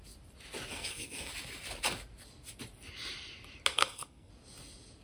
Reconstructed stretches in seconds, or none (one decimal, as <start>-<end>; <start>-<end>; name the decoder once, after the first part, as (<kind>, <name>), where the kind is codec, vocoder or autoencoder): 0.7-1.3 (codec, SNAC); 3.7-4.3